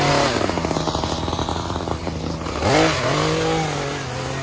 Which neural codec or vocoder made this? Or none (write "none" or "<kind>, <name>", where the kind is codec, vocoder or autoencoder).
none